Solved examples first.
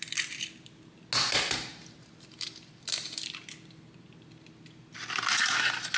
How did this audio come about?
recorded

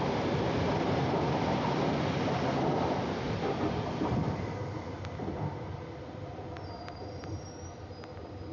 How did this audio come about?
recorded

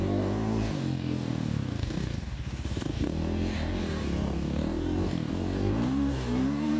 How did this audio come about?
remade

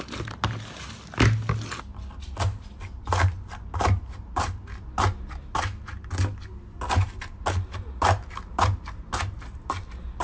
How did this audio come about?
recorded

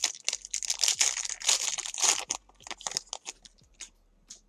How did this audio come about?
recorded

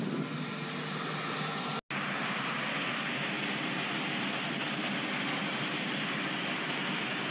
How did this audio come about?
recorded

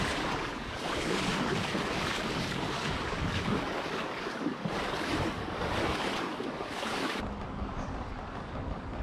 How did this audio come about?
remade